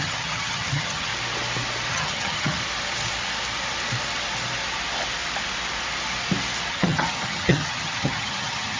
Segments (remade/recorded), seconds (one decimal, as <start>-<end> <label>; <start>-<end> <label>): 0.0-1.1 remade; 1.1-1.9 recorded; 1.9-2.6 remade; 2.6-6.7 recorded; 6.7-8.8 remade